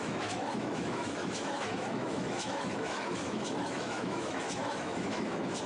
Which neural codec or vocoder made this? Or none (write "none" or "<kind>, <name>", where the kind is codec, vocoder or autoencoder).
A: autoencoder, DAC-VAE